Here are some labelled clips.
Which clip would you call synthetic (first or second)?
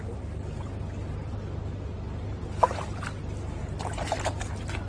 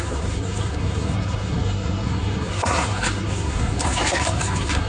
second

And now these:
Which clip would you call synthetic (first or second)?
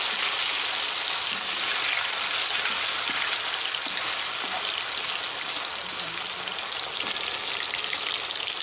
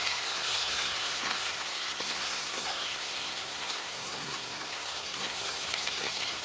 second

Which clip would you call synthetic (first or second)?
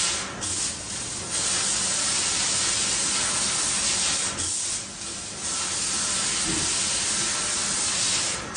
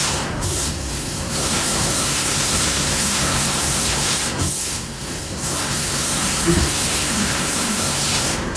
second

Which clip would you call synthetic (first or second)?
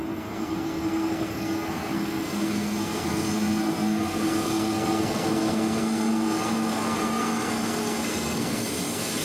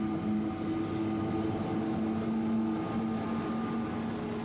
first